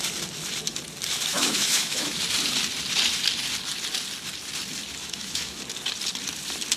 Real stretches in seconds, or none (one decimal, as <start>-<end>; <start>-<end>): 0.0-1.3; 2.2-5.0; 5.6-6.8